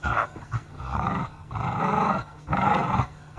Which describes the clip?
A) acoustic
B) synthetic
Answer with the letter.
B